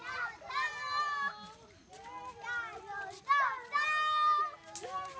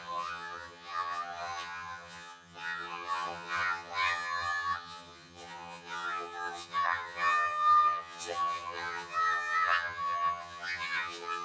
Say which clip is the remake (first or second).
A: second